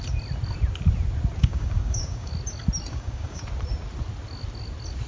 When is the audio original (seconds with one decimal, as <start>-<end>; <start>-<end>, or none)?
0.0-1.4; 2.3-2.9; 3.4-5.1